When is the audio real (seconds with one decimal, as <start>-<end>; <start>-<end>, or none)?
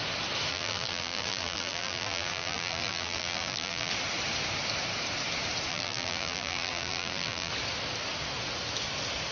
0.0-0.5; 3.9-5.7; 7.5-9.3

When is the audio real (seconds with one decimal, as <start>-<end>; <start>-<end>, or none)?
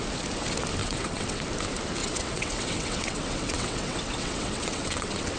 0.0-0.8; 1.4-2.0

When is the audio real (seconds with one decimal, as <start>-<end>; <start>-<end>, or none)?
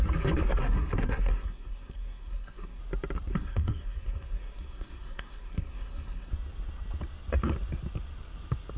0.0-0.6; 2.8-3.3; 6.3-8.8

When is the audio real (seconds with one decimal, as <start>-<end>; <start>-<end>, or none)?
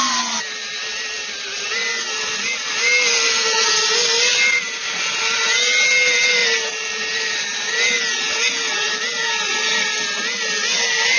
0.0-11.2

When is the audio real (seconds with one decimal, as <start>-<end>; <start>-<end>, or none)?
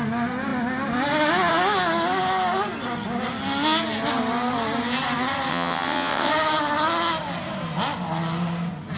0.0-5.5; 6.3-9.0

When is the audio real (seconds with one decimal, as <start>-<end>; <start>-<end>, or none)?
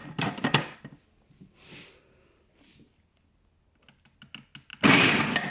3.3-5.5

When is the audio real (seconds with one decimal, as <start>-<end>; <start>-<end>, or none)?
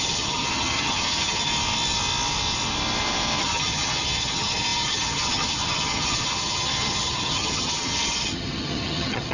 1.5-3.4